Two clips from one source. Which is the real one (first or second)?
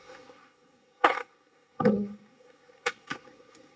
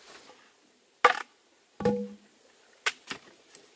second